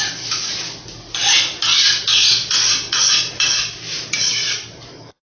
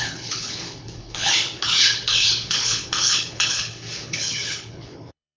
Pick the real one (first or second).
first